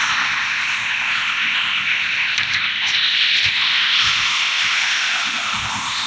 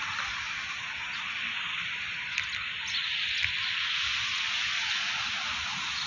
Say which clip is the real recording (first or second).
second